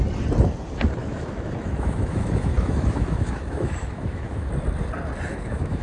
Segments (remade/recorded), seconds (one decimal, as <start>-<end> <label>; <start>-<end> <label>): 0.0-1.0 recorded; 1.0-4.5 remade; 4.5-5.3 recorded; 5.3-5.8 remade